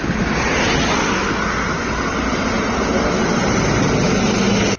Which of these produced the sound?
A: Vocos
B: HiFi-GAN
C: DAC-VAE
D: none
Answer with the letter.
D